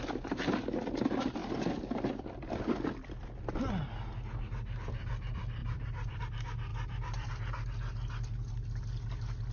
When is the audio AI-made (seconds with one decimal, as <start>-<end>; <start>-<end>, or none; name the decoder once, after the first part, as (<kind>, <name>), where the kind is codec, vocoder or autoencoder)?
1.4-3.7 (vocoder, BigVGAN v2); 5.6-6.2; 6.7-7.3